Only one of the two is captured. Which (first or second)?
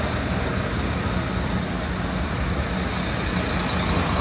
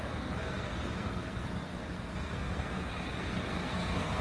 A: first